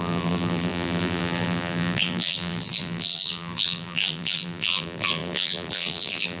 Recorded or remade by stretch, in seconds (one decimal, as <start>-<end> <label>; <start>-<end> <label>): 0.0-6.4 remade

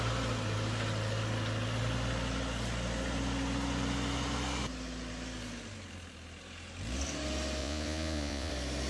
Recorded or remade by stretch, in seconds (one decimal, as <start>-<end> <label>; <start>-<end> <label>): 0.0-7.6 recorded; 7.6-8.5 remade; 8.5-8.9 recorded

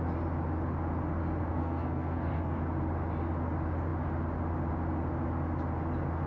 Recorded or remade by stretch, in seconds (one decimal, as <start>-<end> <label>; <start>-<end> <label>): 0.0-1.4 recorded; 1.4-2.6 remade; 2.6-6.3 recorded

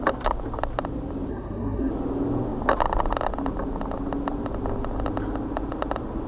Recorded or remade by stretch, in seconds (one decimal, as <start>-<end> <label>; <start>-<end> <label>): 0.0-1.3 recorded; 1.3-1.9 remade; 1.9-6.3 recorded